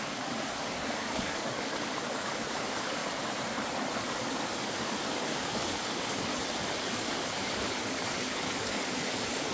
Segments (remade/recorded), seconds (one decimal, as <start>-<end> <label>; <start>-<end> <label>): 0.0-3.0 remade; 3.0-4.0 recorded; 4.0-6.3 remade; 6.3-6.9 recorded; 6.9-9.5 remade